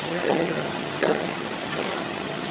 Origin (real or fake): fake